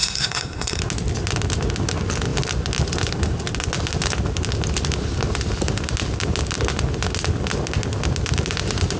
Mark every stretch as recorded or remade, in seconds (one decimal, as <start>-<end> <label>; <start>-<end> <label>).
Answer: 0.0-0.8 remade; 0.8-9.0 recorded